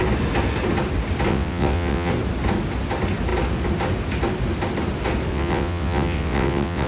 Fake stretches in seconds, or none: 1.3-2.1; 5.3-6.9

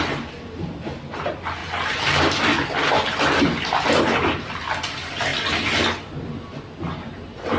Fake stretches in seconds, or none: none

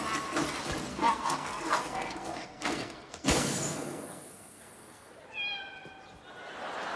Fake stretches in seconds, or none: 0.9-5.1

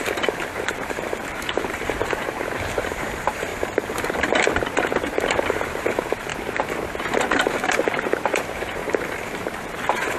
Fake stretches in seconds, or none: 0.0-3.5; 4.6-6.3; 7.1-8.8; 9.6-10.2

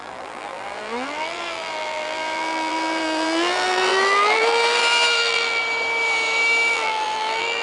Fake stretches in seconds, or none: 0.0-5.6; 6.7-7.6

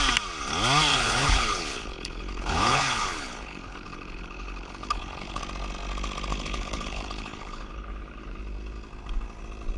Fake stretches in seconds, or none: 0.9-5.4; 6.3-8.4